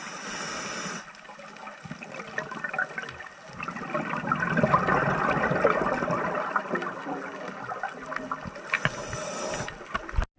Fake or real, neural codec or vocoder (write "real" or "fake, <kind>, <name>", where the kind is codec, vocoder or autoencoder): real